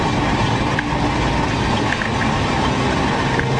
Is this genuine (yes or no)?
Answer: yes